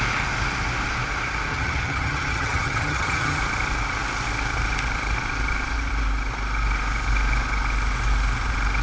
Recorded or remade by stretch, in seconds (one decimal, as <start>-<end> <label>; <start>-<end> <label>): 0.0-1.5 recorded; 1.5-3.4 remade; 3.4-8.8 recorded